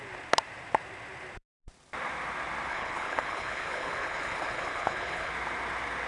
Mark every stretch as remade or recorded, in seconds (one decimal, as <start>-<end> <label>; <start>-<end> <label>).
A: 0.0-2.7 recorded; 2.7-5.3 remade; 5.3-6.1 recorded